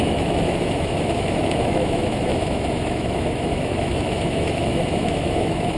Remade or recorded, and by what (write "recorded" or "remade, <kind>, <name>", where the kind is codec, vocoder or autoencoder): remade, autoencoder, DAC-VAE